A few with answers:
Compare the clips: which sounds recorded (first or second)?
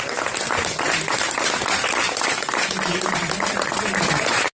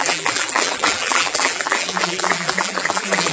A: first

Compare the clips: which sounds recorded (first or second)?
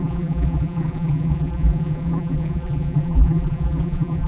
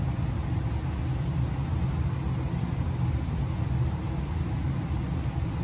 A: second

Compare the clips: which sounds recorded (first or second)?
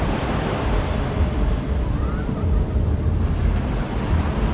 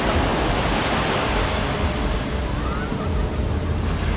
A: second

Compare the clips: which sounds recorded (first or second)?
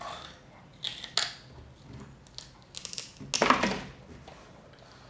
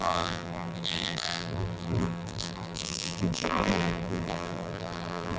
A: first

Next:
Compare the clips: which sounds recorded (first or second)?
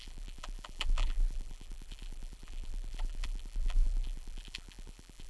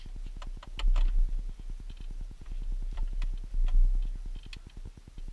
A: second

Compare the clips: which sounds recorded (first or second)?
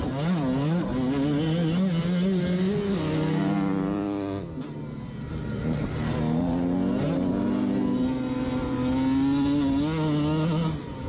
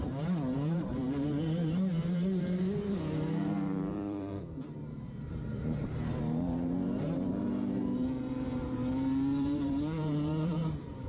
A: first